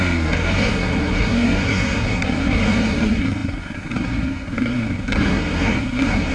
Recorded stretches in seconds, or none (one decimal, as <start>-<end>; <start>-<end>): none